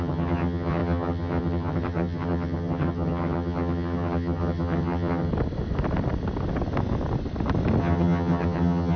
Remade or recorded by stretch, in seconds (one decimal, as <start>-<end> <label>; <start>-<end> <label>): 0.0-5.3 remade; 5.3-7.8 recorded; 7.8-9.0 remade